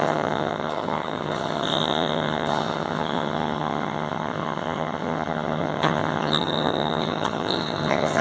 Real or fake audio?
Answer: fake